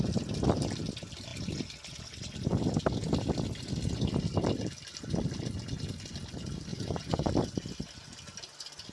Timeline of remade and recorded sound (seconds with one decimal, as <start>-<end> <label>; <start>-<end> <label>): 0.0-6.7 recorded; 6.7-7.3 remade; 7.3-8.9 recorded